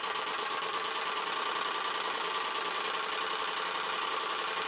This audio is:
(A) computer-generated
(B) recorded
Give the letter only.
B